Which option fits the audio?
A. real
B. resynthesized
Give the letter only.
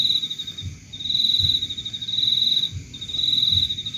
A